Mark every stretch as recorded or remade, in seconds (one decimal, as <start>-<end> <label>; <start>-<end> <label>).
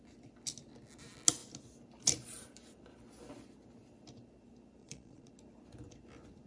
0.0-4.8 recorded; 4.8-5.3 remade; 5.3-6.5 recorded